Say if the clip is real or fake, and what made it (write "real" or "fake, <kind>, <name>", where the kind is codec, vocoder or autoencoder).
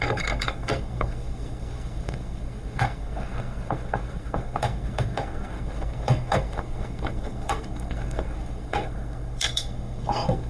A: fake, codec, SNAC